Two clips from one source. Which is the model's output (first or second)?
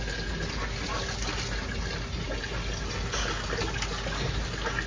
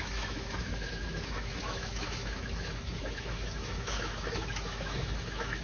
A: second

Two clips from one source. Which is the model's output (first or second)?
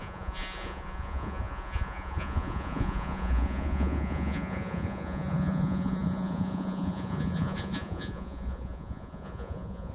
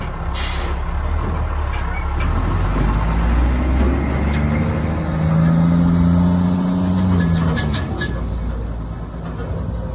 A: first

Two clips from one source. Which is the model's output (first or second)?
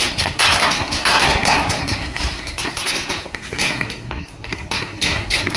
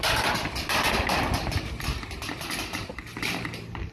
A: first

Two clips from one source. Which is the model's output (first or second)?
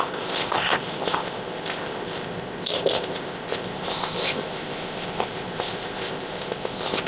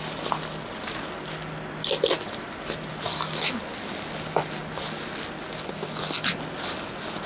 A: first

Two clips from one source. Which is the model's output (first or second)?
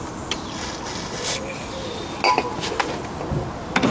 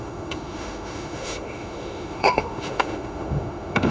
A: second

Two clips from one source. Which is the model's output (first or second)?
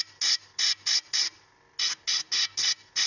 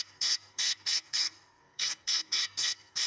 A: second